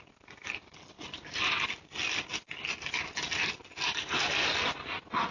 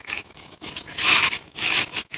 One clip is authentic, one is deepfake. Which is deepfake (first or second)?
second